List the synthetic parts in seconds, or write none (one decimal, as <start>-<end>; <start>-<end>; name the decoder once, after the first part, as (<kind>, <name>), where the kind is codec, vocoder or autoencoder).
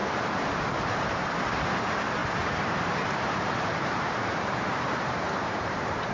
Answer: 0.5-6.1 (vocoder, BigVGAN v2)